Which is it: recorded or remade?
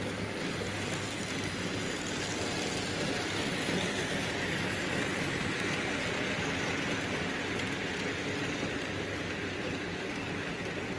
recorded